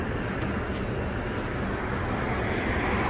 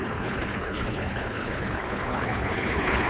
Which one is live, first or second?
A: first